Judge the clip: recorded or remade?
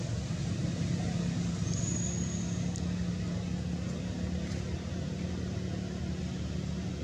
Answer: recorded